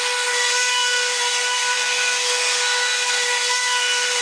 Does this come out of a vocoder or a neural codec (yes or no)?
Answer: yes